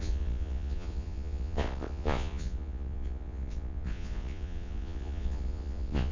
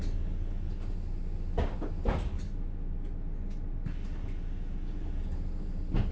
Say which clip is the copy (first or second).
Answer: first